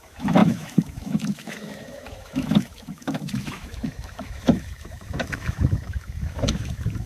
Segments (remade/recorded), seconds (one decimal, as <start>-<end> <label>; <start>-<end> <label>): 0.0-7.1 remade